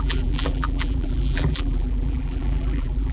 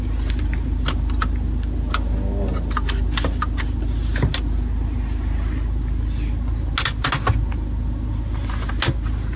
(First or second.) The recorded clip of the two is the second